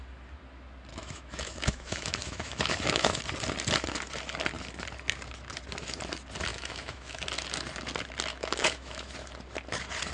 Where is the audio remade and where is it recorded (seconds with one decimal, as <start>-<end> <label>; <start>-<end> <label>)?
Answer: 0.0-0.9 recorded; 0.9-3.2 remade; 3.2-6.5 recorded; 6.5-7.2 remade; 7.2-8.3 recorded; 8.3-9.1 remade; 9.1-10.1 recorded